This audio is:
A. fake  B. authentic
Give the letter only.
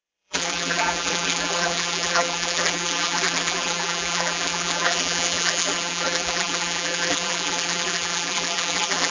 A